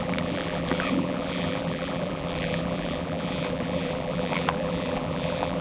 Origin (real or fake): fake